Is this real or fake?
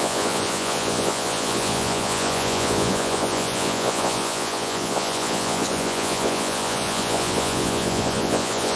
fake